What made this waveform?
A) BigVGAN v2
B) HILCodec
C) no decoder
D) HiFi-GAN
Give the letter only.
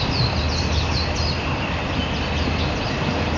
C